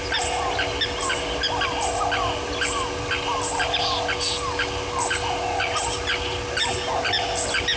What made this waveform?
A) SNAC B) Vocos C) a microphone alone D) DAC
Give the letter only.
C